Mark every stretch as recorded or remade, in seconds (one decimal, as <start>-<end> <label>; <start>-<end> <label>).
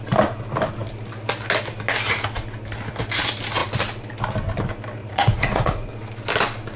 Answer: 0.0-5.0 recorded; 5.0-5.9 remade; 5.9-6.8 recorded